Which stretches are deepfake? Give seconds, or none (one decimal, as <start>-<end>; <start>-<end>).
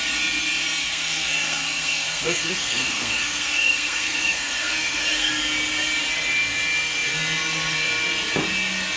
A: 0.8-5.3